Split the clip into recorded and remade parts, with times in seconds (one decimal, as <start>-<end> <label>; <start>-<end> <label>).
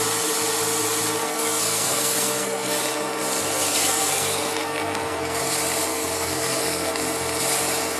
0.0-1.2 recorded; 1.2-2.8 remade; 2.8-3.7 recorded; 3.7-5.4 remade; 5.4-5.9 recorded; 5.9-6.9 remade; 6.9-8.0 recorded